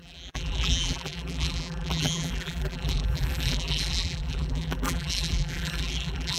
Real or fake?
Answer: fake